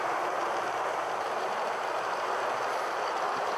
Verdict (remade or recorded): recorded